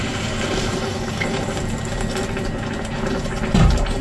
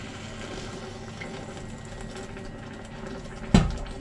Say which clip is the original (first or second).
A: second